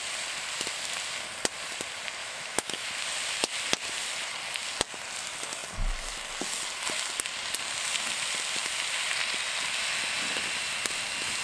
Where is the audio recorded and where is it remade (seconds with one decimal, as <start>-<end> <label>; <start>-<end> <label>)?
0.0-2.2 recorded; 2.2-2.9 remade; 2.9-11.4 recorded